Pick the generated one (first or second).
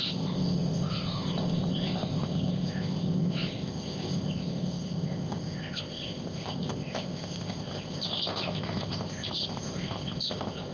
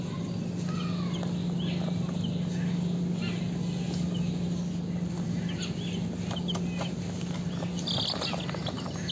first